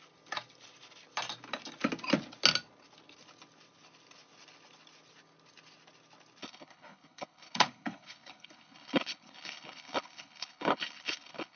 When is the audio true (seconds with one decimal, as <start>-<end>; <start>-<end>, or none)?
0.0-6.4